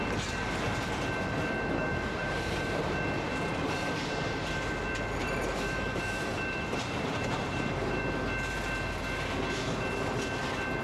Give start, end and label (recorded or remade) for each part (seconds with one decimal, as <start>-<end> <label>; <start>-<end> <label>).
0.0-1.9 recorded; 1.9-2.8 remade; 2.8-5.2 recorded; 5.2-8.0 remade; 8.0-10.8 recorded